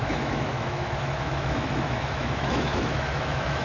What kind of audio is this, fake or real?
fake